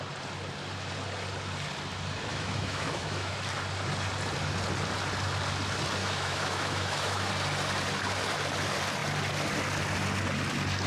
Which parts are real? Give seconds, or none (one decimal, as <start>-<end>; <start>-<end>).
0.0-2.3; 3.3-6.0; 7.3-10.9